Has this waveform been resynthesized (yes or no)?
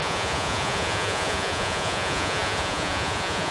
yes